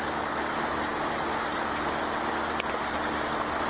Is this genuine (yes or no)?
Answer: yes